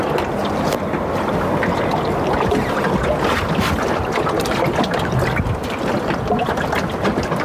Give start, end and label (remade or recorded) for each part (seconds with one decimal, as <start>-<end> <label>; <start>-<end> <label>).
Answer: 0.0-7.4 recorded